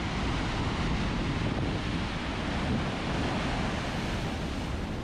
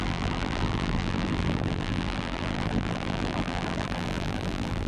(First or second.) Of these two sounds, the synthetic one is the second